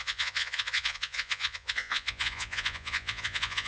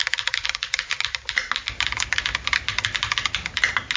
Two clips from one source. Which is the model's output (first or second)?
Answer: first